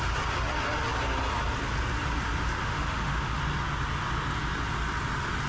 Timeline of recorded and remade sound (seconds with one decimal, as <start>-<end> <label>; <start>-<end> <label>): 0.0-2.6 recorded; 2.6-3.4 remade; 3.4-5.5 recorded